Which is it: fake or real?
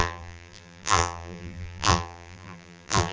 fake